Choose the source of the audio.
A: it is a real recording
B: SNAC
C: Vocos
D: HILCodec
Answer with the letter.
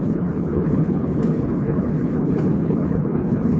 D